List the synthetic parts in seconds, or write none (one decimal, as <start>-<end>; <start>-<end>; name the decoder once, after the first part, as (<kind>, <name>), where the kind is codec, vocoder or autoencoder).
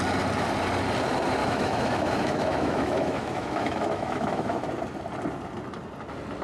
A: 1.4-4.7 (autoencoder, DAC-VAE)